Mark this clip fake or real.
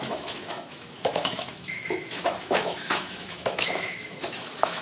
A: fake